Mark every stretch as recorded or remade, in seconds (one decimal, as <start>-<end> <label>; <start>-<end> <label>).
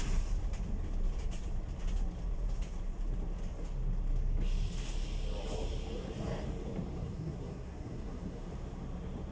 0.0-7.0 recorded; 7.0-8.5 remade; 8.5-9.3 recorded